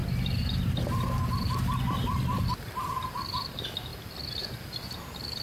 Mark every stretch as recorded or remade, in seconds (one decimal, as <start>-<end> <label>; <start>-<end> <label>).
0.0-3.2 remade; 3.2-5.4 recorded